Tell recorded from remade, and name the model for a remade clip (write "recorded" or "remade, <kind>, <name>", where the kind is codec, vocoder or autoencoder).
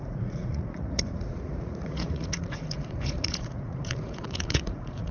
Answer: remade, vocoder, Vocos